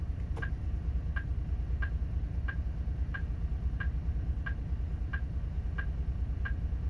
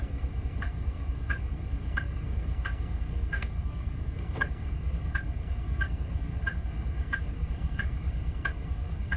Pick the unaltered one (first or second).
first